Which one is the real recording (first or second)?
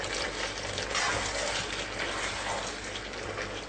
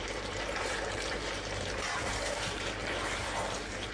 first